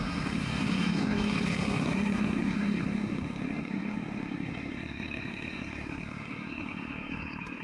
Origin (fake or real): fake